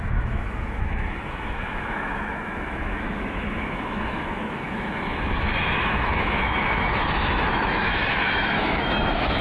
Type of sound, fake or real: fake